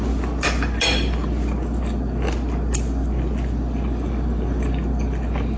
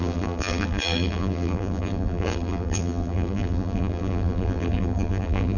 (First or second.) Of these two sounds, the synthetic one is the second